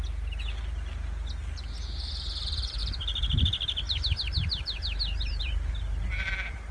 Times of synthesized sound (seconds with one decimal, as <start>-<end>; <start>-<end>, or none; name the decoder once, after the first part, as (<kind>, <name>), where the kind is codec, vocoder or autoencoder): 2.8-6.3 (vocoder, BigVGAN v2)